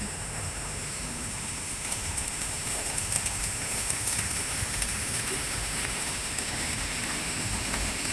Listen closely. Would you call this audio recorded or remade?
remade